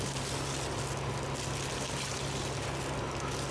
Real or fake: real